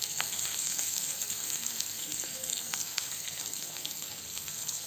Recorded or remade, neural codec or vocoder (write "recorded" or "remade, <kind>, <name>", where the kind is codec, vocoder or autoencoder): remade, codec, SNAC